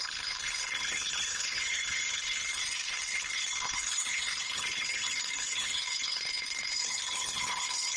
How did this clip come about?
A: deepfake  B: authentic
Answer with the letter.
A